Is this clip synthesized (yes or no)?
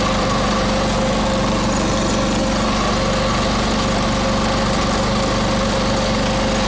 no